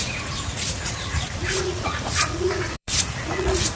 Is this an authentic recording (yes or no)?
no